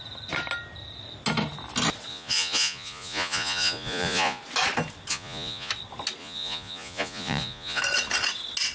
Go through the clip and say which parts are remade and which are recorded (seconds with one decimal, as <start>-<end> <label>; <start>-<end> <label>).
0.0-2.1 recorded; 2.1-4.4 remade; 4.4-5.1 recorded; 5.1-5.7 remade; 5.7-6.2 recorded; 6.2-7.8 remade; 7.8-8.7 recorded